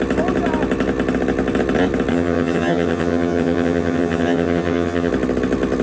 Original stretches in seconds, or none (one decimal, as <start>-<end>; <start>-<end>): 0.0-2.1; 5.1-5.8